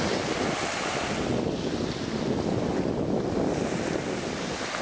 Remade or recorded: recorded